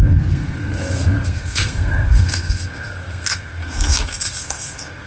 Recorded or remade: remade